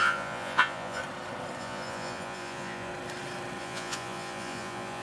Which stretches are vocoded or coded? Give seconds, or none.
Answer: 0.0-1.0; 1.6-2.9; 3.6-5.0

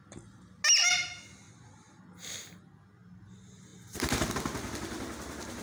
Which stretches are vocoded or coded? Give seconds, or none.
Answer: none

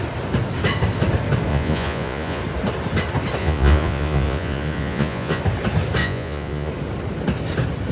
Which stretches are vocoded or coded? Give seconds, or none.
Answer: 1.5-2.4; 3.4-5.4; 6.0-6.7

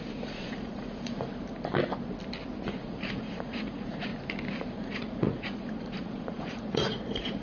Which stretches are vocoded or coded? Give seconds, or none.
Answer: 0.0-1.3; 2.7-4.1; 4.7-7.4

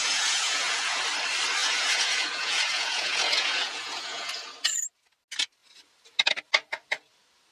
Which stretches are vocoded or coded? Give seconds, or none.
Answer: 0.0-1.0; 1.6-4.3

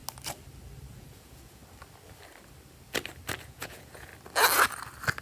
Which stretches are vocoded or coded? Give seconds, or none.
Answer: 0.9-1.6; 3.4-4.1

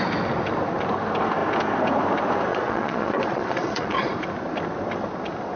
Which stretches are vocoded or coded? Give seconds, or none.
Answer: 2.5-4.1

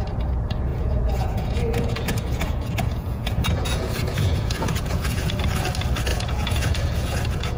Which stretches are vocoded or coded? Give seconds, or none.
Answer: 0.7-5.3; 6.1-7.6